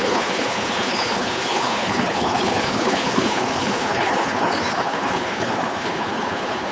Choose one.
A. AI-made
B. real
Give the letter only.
A